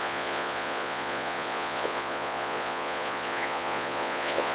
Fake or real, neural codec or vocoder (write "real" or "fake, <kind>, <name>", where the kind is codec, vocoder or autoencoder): fake, vocoder, Vocos